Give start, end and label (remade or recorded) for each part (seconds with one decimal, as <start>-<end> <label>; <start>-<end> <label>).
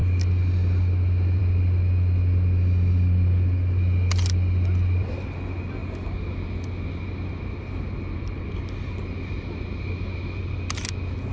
0.0-11.3 recorded